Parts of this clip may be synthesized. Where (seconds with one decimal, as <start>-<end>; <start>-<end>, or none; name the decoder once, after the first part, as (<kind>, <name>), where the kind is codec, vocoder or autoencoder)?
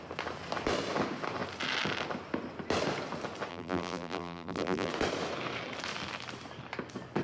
3.5-4.9 (vocoder, BigVGAN v2)